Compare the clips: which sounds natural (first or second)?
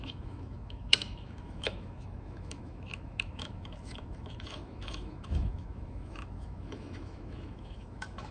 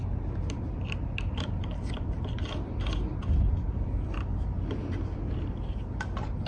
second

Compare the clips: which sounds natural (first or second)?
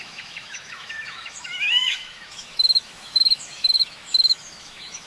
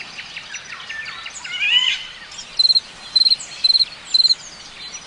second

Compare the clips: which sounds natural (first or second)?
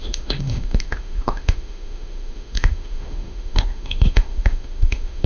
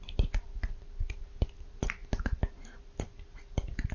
second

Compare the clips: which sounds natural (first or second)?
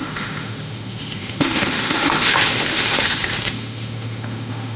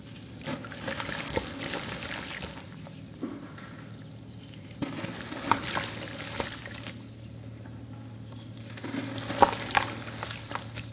second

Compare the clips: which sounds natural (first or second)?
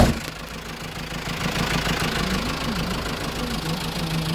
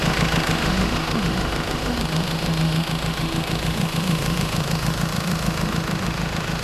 first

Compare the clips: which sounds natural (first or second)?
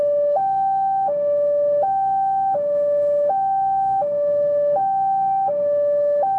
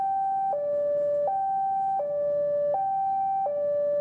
second